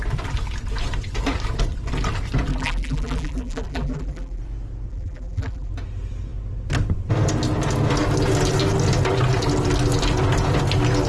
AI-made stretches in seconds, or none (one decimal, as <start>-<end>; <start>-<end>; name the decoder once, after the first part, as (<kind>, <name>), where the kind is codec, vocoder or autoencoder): 2.5-4.4 (vocoder, BigVGAN v2); 4.9-5.7